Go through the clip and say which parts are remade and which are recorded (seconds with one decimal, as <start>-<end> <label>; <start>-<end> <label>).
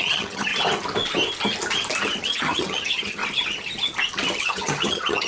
0.0-0.5 remade; 0.5-2.2 recorded; 2.2-3.2 remade; 3.2-4.4 recorded; 4.4-5.3 remade